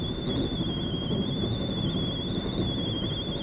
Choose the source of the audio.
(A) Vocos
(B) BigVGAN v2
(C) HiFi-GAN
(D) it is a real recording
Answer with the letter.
D